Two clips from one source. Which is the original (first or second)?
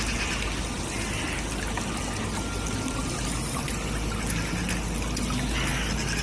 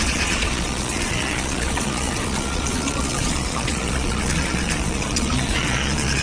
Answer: first